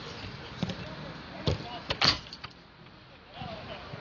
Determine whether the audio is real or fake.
real